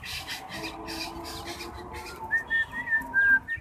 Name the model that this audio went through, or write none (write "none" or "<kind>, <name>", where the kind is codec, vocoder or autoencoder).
none